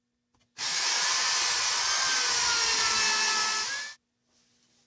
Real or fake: real